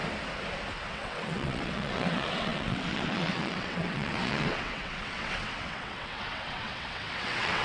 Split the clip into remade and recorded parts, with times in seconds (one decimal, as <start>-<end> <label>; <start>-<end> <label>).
0.0-0.9 recorded; 0.9-7.6 remade